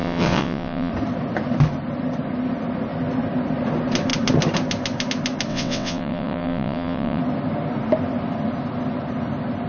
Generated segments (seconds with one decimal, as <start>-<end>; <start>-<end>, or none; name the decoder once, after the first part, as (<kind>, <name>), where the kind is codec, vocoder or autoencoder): 0.0-0.9 (vocoder, WaveNeXt); 5.5-7.2